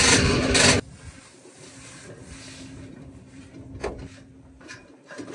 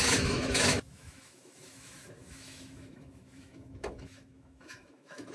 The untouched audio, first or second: first